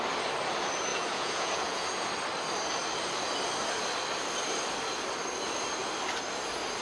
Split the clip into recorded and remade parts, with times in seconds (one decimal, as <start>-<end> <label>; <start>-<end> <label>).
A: 0.0-0.9 recorded; 0.9-2.1 remade; 2.1-6.8 recorded